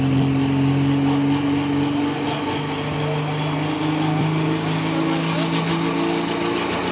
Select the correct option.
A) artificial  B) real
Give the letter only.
B